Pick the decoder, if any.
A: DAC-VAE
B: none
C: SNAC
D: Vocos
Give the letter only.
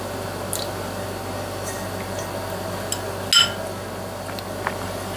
B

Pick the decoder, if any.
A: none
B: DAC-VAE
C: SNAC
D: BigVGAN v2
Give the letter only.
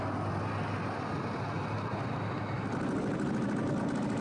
A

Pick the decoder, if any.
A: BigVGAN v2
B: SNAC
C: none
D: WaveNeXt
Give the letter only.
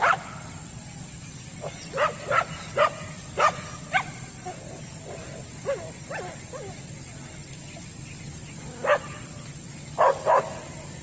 C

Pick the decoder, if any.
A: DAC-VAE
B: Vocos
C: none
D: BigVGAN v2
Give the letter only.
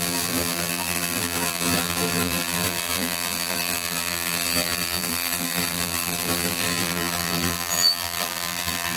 D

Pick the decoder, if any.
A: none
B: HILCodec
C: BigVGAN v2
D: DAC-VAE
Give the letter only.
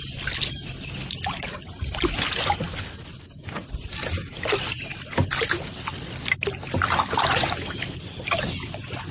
A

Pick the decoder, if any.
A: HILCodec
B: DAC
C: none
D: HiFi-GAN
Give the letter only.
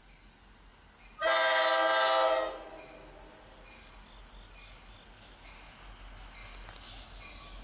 C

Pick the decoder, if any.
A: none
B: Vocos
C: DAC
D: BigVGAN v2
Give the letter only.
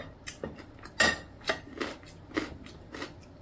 A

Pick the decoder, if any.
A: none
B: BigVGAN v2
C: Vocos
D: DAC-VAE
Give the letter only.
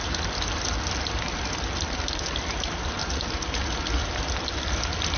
A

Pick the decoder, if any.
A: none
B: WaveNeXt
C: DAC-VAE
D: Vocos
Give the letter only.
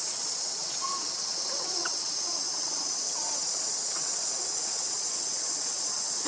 B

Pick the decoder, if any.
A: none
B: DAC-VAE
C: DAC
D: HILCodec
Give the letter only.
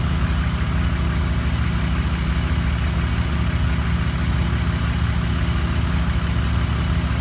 A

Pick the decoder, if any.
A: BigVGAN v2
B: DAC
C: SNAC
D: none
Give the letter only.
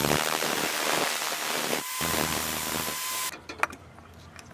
D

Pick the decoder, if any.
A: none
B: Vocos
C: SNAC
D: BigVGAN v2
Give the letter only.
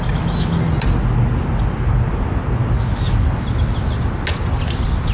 A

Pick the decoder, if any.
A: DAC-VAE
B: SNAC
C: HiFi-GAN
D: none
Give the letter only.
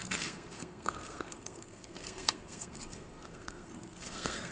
B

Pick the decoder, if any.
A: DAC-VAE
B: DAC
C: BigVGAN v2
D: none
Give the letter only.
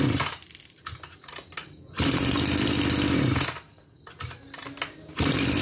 D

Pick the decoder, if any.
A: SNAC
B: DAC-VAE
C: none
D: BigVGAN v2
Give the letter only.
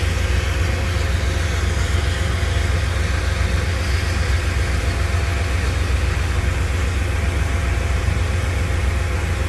C